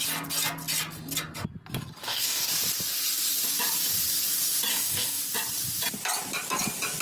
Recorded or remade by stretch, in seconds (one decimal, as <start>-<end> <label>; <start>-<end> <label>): 0.0-2.0 recorded; 2.0-2.5 remade; 2.5-4.7 recorded; 4.7-5.2 remade; 5.2-7.0 recorded